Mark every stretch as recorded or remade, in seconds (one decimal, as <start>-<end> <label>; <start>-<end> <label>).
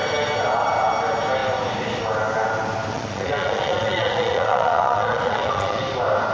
0.0-2.9 recorded; 2.9-5.8 remade; 5.8-6.3 recorded